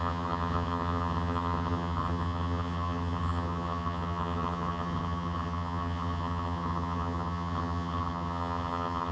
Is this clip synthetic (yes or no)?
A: yes